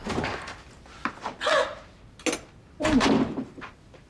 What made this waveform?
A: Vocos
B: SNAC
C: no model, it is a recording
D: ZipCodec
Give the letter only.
C